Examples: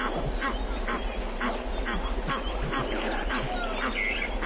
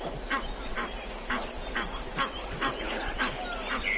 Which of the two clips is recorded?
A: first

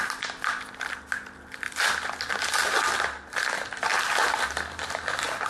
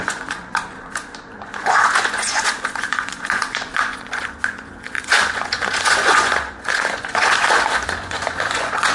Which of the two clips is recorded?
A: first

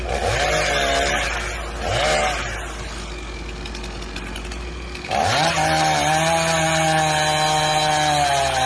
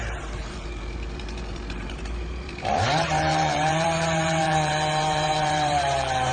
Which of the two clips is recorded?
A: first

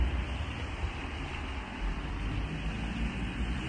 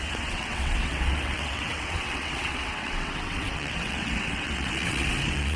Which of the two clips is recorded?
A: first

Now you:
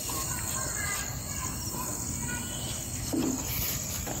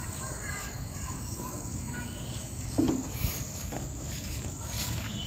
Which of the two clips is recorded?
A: first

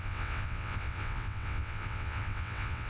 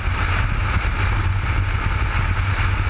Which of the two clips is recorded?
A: second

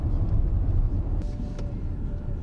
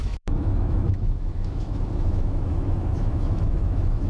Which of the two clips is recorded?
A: first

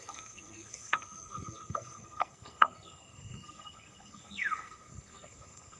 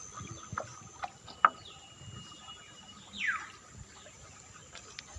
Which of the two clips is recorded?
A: second